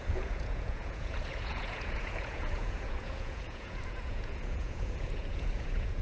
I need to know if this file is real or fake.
fake